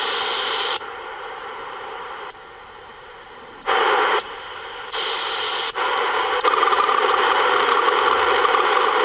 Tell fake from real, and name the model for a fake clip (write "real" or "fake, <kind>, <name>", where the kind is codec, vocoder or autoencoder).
fake, vocoder, BigVGAN v2